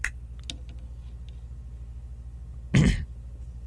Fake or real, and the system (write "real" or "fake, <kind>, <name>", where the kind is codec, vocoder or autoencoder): real